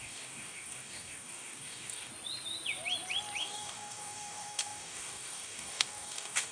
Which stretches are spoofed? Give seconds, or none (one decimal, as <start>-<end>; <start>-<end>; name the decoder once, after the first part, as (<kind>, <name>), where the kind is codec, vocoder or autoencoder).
0.0-2.1 (codec, DAC); 3.4-6.5